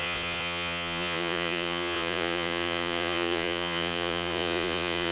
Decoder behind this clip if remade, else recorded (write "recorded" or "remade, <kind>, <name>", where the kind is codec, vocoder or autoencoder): remade, vocoder, Vocos